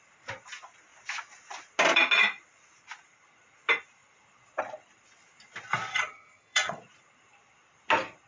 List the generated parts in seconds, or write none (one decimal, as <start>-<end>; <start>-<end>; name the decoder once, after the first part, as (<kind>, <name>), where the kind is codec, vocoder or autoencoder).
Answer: 5.9-6.8 (vocoder, HiFi-GAN)